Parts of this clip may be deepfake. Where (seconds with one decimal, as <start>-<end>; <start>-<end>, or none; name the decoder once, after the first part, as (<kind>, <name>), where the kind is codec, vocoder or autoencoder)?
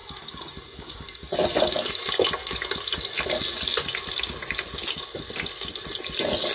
none